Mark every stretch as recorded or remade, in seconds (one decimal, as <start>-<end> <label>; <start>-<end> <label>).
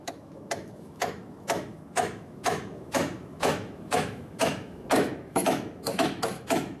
0.0-6.8 remade